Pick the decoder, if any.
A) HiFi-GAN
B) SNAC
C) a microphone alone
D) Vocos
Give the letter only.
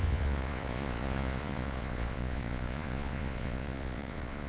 D